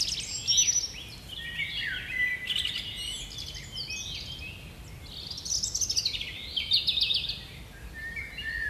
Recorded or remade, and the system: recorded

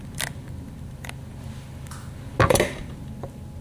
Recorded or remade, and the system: recorded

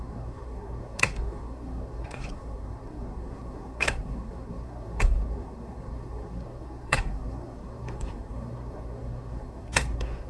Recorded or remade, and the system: remade, codec, SNAC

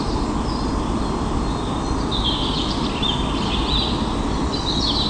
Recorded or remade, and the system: recorded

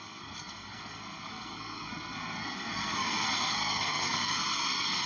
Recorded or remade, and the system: remade, codec, SNAC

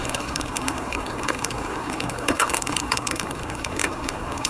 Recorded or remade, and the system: remade, codec, SNAC